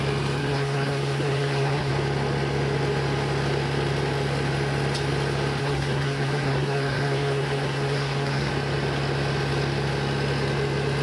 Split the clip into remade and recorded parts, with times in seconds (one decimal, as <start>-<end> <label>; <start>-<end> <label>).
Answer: 0.0-0.4 recorded; 0.4-1.9 remade; 1.9-5.6 recorded; 5.6-8.5 remade; 8.5-11.0 recorded